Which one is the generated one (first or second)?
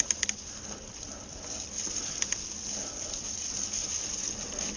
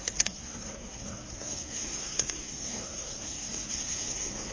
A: second